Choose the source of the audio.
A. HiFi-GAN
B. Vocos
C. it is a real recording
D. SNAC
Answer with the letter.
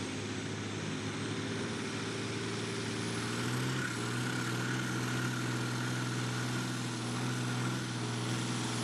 C